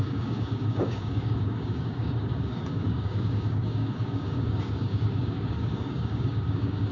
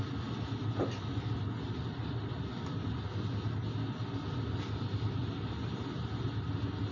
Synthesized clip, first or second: first